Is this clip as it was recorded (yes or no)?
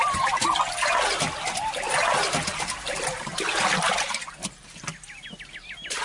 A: yes